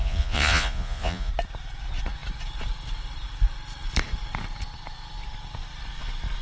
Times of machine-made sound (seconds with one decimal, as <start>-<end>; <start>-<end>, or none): 0.0-1.3